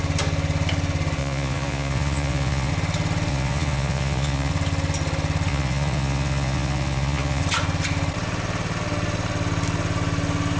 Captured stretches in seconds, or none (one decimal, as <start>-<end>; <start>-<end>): 0.0-1.2; 2.7-3.3; 4.5-5.5; 7.4-10.6